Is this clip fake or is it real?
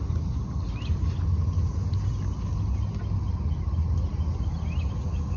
real